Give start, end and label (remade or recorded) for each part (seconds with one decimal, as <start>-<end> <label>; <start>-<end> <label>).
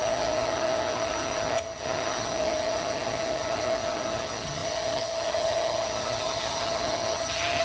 0.0-7.6 remade